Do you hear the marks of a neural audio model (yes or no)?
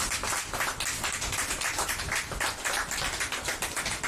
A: no